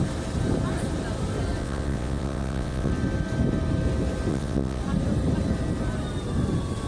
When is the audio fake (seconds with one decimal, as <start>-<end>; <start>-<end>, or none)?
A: 1.6-2.9; 4.3-4.8